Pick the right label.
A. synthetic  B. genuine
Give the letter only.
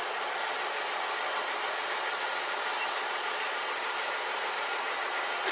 B